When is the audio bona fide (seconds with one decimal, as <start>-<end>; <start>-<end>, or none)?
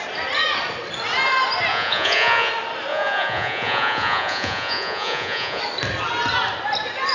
0.0-1.7; 2.5-2.9; 5.6-7.1